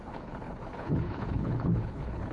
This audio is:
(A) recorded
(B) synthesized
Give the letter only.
B